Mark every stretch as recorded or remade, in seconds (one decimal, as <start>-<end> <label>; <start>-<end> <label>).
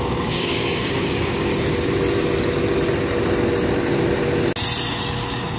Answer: 0.0-1.5 remade; 1.5-4.9 recorded; 4.9-5.6 remade